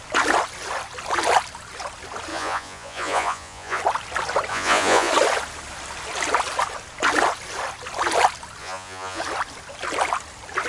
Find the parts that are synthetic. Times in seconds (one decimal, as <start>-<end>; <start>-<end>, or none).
2.3-3.8; 4.5-5.1; 8.6-9.2